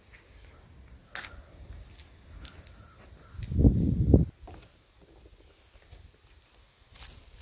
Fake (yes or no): no